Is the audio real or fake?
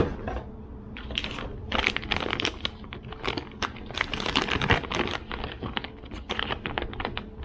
real